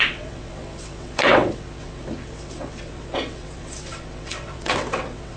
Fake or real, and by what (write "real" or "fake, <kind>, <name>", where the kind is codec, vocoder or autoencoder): fake, vocoder, WaveNeXt